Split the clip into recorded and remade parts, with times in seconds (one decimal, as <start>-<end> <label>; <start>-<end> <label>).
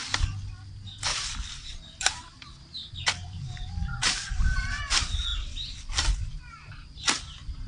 0.0-1.1 recorded; 1.1-4.8 remade; 4.8-7.7 recorded